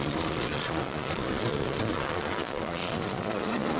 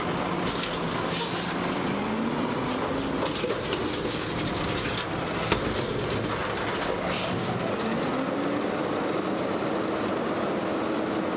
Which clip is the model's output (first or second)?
first